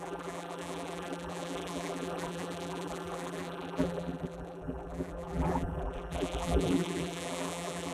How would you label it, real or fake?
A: fake